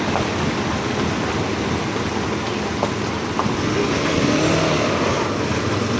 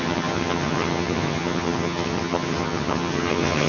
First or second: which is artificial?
second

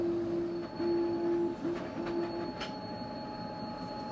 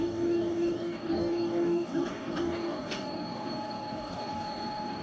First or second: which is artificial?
second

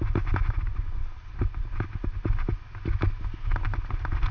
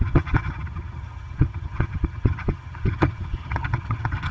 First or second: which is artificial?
second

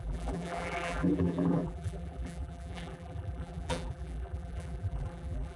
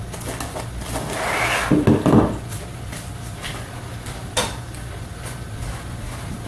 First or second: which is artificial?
first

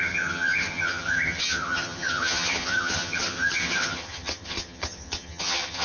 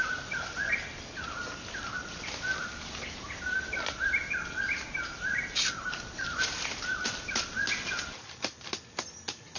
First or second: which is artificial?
first